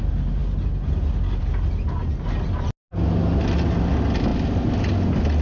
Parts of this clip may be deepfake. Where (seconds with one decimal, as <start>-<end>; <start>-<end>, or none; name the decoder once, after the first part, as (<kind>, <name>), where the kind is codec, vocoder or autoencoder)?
none